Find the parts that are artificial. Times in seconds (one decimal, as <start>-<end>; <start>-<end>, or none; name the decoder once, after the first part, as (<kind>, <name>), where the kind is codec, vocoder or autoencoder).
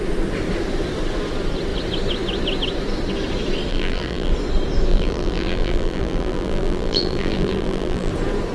3.7-4.3 (vocoder, BigVGAN v2); 4.9-8.1